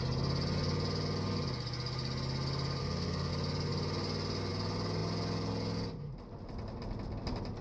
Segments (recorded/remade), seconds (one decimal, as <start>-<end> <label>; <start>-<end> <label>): 0.0-2.8 recorded; 2.8-3.3 remade; 3.3-7.6 recorded